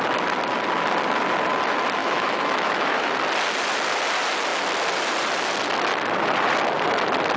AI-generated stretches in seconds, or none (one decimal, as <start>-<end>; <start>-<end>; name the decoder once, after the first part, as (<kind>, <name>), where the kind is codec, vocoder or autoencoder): 2.0-3.1 (autoencoder, DAC-VAE)